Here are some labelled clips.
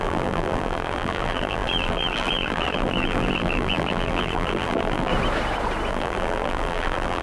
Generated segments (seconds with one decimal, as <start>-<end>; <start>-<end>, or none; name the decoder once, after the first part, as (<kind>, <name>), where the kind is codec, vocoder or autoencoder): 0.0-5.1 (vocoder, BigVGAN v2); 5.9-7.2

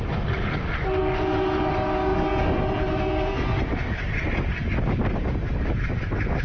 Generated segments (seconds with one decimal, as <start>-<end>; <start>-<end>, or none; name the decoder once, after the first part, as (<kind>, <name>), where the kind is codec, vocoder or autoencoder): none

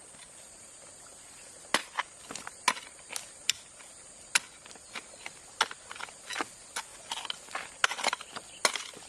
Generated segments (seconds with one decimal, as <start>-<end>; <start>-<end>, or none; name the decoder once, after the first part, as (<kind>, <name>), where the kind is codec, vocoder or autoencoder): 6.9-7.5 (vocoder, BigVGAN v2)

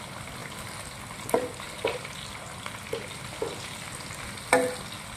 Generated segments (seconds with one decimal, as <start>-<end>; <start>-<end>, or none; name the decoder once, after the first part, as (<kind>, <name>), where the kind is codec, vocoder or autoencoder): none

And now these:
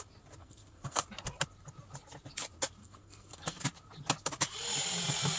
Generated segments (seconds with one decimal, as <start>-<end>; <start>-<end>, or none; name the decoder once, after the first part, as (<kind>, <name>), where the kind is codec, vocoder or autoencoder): 0.4-1.0 (codec, SNAC); 2.8-3.6

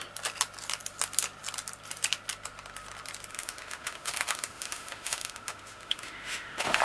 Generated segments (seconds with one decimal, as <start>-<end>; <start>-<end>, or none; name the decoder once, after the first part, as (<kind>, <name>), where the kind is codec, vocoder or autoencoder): 3.3-6.8 (autoencoder, DAC-VAE)

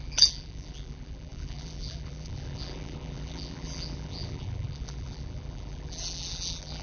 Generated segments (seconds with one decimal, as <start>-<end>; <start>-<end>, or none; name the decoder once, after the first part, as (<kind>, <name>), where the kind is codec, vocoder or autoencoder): 0.0-6.8 (vocoder, BigVGAN v2)

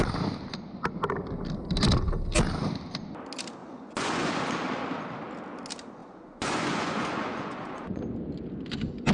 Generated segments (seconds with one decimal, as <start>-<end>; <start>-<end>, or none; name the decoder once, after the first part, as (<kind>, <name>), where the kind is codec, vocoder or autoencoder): 3.6-4.3 (vocoder, Vocos); 6.0-8.0